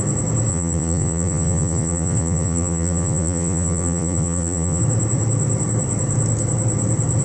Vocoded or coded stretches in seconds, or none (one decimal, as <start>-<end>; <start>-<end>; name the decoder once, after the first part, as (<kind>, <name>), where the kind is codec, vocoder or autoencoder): 0.5-4.8 (vocoder, Vocos)